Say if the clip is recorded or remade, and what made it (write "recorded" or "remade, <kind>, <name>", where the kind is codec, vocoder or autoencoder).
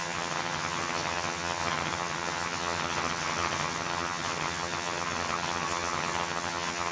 remade, vocoder, HiFi-GAN